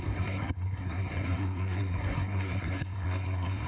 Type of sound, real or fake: fake